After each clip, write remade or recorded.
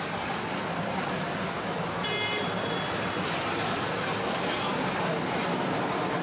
remade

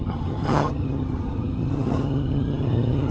remade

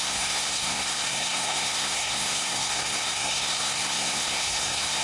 remade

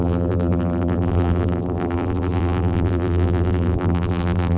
remade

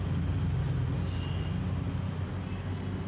recorded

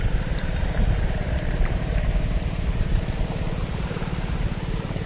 remade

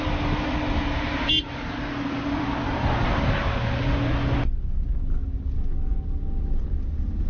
recorded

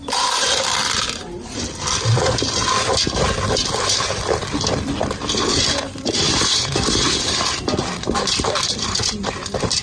remade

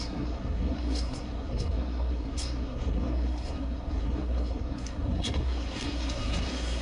remade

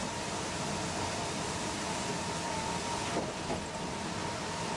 recorded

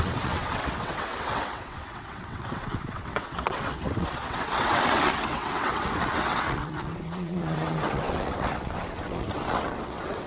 remade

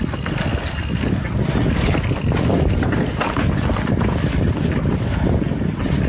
recorded